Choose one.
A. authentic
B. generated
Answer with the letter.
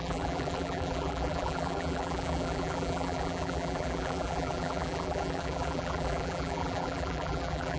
B